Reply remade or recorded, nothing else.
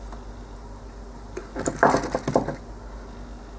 recorded